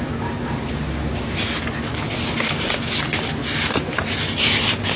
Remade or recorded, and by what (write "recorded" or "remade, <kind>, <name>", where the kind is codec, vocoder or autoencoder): recorded